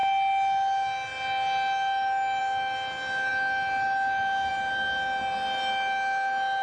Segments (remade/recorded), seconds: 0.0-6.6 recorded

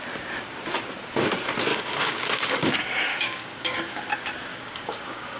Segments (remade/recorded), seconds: 0.0-1.7 recorded; 1.7-2.7 remade; 2.7-3.1 recorded; 3.1-4.0 remade; 4.0-4.5 recorded; 4.5-5.4 remade

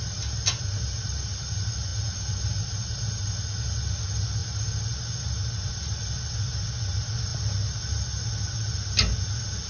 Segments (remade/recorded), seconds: 0.0-9.7 recorded

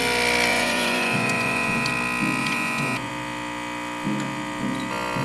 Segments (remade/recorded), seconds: 0.0-0.5 recorded; 0.5-1.9 remade; 1.9-2.4 recorded; 2.4-3.1 remade; 3.1-5.2 recorded